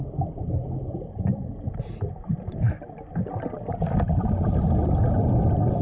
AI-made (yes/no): no